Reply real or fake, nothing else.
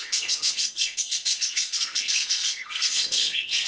fake